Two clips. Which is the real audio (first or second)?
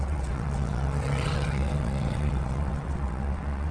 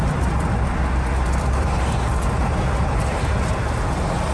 second